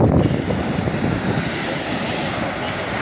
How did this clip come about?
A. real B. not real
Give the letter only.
A